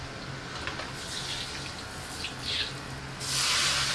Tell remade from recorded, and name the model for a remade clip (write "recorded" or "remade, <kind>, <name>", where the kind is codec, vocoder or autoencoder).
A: recorded